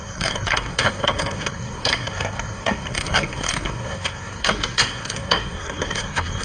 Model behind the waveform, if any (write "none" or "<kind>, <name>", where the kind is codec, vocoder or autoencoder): codec, SNAC